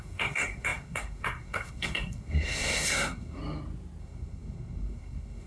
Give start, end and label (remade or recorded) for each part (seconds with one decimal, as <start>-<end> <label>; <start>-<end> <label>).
0.0-3.4 remade; 3.4-4.0 recorded; 4.0-5.5 remade